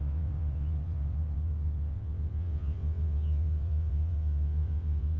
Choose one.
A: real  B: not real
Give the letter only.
B